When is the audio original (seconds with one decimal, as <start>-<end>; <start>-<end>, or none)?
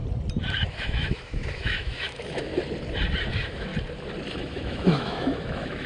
0.0-0.7; 2.5-3.3; 3.7-4.3